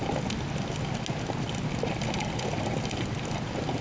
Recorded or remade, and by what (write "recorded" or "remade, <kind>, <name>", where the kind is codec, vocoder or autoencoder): recorded